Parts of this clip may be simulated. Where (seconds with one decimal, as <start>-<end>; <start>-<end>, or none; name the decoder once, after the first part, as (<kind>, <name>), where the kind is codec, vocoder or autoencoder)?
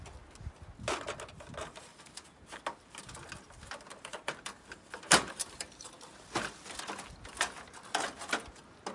1.9-2.6 (vocoder, BigVGAN v2); 4.1-6.2